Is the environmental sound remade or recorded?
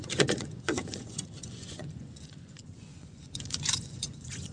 remade